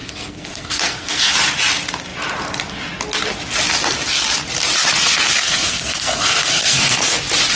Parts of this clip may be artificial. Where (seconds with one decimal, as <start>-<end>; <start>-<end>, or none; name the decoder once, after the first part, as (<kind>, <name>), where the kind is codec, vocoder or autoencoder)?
0.0-1.3 (codec, SNAC); 5.4-7.1